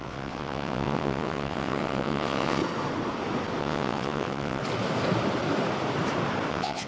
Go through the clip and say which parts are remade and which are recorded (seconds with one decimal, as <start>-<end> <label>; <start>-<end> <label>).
0.0-2.6 remade; 2.6-3.6 recorded; 3.6-4.6 remade; 4.6-6.5 recorded; 6.5-6.9 remade